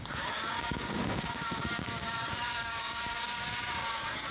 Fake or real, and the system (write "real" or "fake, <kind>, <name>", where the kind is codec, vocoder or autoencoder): fake, codec, DAC